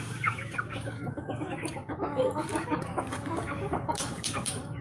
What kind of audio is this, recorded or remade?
remade